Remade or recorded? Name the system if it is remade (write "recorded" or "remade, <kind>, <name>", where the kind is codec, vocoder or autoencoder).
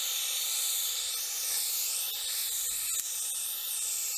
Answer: recorded